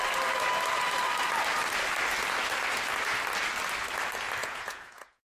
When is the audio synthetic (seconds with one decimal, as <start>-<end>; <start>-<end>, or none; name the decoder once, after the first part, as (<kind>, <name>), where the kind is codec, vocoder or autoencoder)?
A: 4.4-5.3 (vocoder, Vocos)